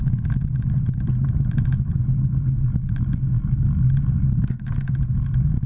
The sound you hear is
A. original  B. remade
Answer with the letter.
A